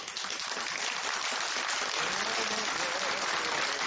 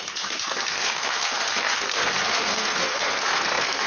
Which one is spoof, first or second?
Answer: second